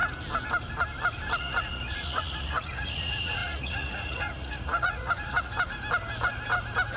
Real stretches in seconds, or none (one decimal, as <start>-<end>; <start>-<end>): 0.0-1.4; 5.5-7.0